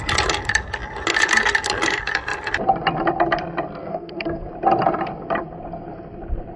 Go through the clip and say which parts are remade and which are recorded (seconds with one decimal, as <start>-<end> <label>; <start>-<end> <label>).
0.0-3.8 recorded; 3.8-4.5 remade; 4.5-6.6 recorded